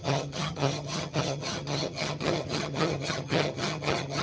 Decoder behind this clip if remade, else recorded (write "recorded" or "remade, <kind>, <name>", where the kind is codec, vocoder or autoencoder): remade, vocoder, HiFi-GAN